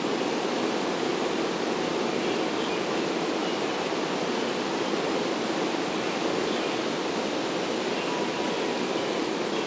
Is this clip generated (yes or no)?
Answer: no